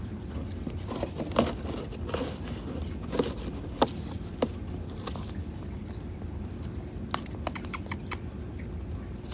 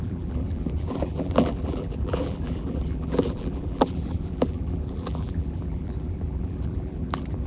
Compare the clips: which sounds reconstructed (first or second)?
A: second